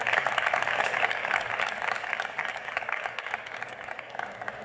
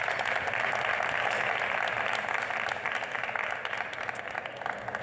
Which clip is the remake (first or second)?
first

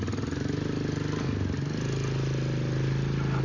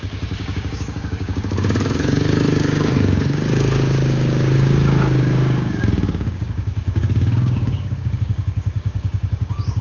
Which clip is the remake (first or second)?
second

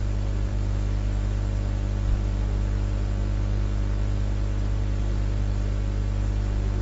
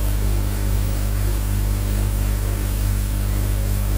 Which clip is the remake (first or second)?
second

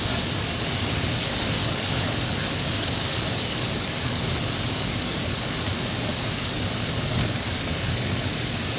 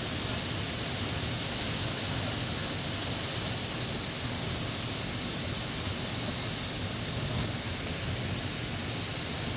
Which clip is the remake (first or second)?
first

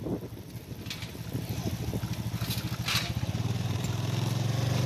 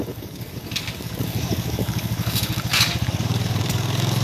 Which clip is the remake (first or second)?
second